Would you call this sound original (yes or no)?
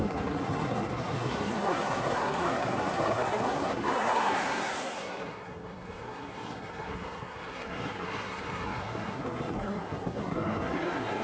no